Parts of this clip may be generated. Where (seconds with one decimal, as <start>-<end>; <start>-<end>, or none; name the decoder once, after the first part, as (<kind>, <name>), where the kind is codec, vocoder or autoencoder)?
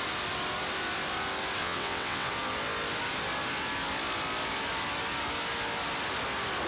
1.6-2.3 (vocoder, WaveNeXt)